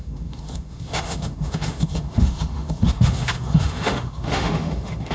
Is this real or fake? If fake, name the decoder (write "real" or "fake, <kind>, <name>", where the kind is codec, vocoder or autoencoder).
fake, autoencoder, DAC-VAE